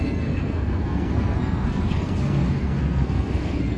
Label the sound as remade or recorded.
remade